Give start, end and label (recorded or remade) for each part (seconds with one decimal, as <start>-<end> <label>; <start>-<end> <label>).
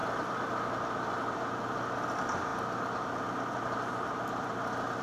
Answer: 0.0-5.0 recorded